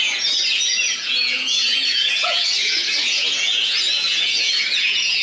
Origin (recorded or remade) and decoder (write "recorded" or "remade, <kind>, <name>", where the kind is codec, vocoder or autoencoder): remade, vocoder, Vocos